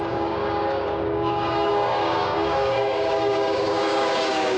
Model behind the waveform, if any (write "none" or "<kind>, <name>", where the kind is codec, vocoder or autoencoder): codec, DAC